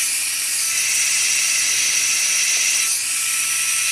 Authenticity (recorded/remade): recorded